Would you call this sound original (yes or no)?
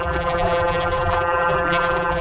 no